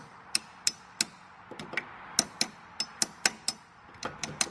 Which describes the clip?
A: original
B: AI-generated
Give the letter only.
A